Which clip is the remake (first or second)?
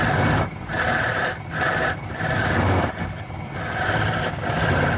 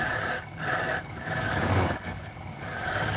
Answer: second